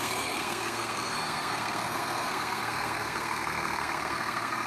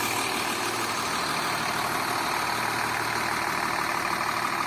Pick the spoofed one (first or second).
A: first